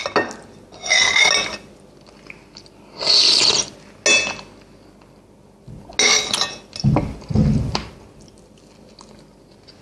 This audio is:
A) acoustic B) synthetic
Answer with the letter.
A